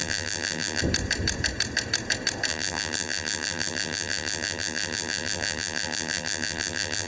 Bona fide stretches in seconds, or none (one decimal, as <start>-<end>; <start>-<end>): 0.8-2.5